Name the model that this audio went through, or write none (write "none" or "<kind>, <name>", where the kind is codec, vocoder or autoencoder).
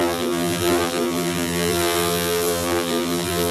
vocoder, BigVGAN v2